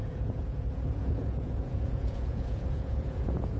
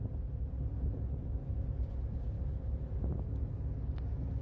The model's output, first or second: first